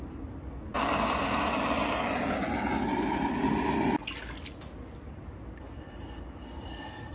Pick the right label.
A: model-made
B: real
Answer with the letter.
B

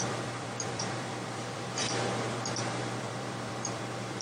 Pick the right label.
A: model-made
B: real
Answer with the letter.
A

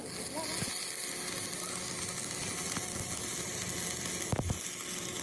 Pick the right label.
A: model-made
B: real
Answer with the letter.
B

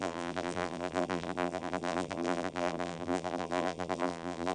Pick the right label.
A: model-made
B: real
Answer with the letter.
A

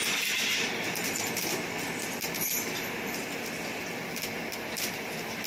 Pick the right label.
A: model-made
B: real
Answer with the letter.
A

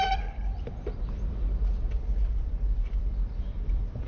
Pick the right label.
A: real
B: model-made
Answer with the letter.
B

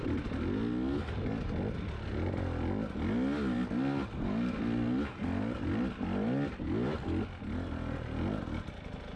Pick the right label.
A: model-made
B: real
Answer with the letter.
B